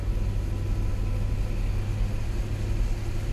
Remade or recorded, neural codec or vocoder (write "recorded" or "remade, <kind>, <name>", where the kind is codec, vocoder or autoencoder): recorded